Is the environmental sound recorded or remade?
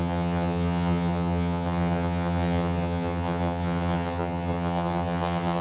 remade